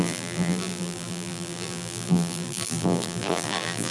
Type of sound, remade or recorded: remade